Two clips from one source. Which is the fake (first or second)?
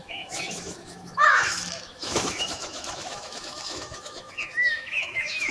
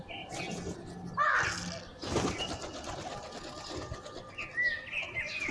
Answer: first